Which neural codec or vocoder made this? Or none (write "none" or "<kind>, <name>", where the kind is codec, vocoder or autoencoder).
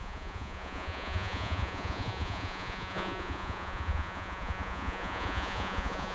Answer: vocoder, Vocos